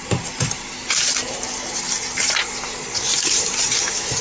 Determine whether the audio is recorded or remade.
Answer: recorded